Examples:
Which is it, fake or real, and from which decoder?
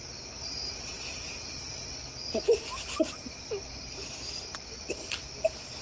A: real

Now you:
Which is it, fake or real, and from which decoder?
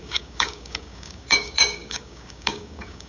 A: fake, codec, DAC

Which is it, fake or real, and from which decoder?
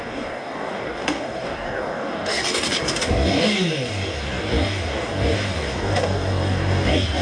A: fake, codec, DAC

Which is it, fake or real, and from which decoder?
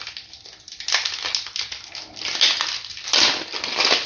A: real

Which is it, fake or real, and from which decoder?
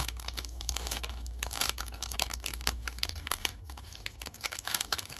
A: fake, codec, DAC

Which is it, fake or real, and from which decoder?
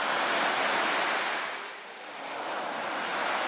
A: real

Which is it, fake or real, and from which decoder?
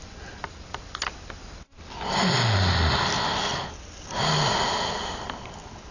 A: real